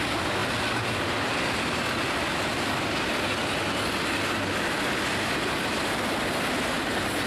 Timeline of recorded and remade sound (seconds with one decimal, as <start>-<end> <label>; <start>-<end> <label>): 0.0-7.3 recorded